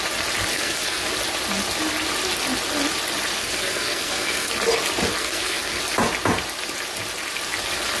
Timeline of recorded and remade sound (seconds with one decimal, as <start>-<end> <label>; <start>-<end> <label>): 0.0-0.5 recorded; 0.5-1.1 remade; 1.1-3.4 recorded; 3.4-4.5 remade; 4.5-5.2 recorded; 5.2-5.8 remade; 5.8-8.0 recorded

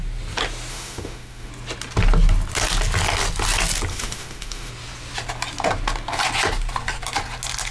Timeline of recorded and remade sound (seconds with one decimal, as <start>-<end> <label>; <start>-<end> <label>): 0.0-0.7 recorded; 0.7-1.5 remade; 1.5-3.9 recorded; 3.9-4.7 remade; 4.7-7.7 recorded

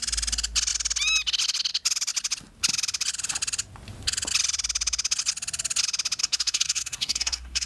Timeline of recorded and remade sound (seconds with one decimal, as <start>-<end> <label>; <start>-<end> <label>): 0.0-6.2 recorded; 6.2-7.7 remade

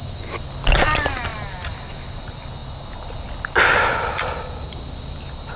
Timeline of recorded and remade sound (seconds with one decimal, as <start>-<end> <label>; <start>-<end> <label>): 0.0-5.6 recorded

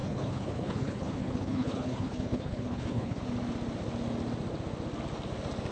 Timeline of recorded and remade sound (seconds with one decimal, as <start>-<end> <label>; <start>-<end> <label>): 0.0-3.2 remade; 3.2-5.7 recorded

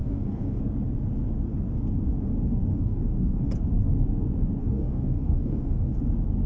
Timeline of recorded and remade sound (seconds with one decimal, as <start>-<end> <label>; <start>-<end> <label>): 0.0-0.6 remade; 0.6-2.7 recorded; 2.7-3.4 remade; 3.4-4.6 recorded; 4.6-6.0 remade; 6.0-6.5 recorded